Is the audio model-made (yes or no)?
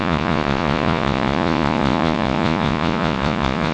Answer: yes